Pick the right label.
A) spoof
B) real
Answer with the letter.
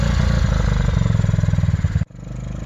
B